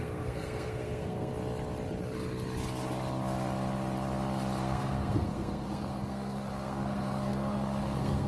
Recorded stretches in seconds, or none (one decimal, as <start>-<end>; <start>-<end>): 1.3-4.6